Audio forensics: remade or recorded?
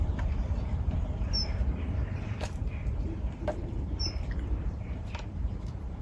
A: remade